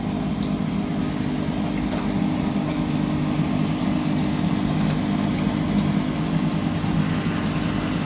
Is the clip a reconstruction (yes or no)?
no